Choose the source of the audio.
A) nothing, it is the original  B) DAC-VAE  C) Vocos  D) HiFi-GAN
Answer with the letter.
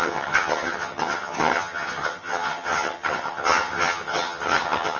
D